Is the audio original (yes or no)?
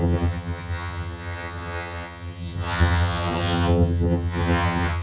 no